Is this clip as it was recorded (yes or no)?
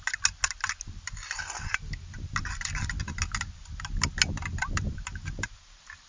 yes